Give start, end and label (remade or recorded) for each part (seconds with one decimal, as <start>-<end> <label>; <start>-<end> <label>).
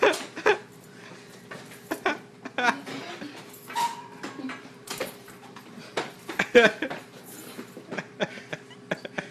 0.0-3.9 recorded; 3.9-8.4 remade; 8.4-9.3 recorded